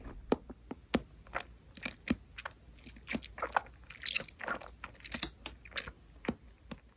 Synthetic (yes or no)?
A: no